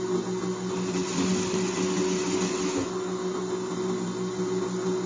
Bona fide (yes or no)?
yes